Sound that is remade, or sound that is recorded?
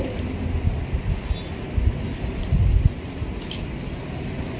recorded